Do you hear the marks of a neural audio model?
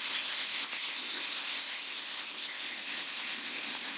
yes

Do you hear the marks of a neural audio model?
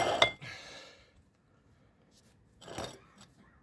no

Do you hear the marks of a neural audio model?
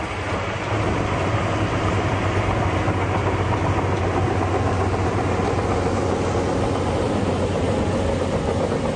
no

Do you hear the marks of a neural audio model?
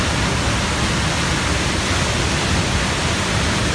no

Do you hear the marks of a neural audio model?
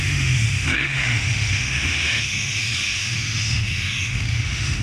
yes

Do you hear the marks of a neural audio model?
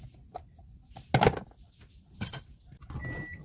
no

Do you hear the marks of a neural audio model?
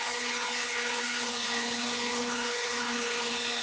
yes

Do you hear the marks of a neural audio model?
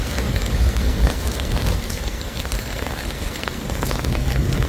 yes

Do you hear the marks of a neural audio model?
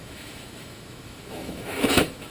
yes